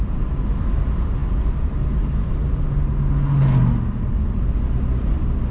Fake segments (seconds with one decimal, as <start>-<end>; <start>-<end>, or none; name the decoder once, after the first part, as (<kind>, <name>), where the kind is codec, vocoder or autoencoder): none